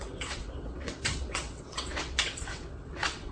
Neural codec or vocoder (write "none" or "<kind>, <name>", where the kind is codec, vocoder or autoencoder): vocoder, WaveNeXt